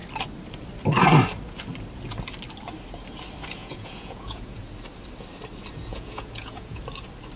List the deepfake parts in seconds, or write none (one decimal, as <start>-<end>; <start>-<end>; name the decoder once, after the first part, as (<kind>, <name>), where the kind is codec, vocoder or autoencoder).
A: 3.6-4.6 (vocoder, Vocos); 5.9-6.8